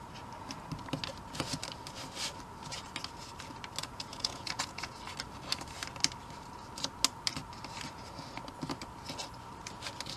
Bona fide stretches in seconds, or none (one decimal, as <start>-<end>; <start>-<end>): 0.0-3.8; 5.0-10.2